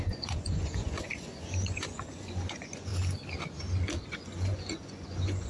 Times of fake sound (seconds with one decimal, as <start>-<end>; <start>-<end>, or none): 0.0-2.9; 4.1-5.5